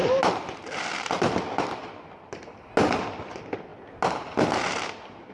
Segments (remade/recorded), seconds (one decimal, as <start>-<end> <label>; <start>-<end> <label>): 0.0-5.3 recorded